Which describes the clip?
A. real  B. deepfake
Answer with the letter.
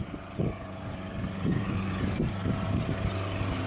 B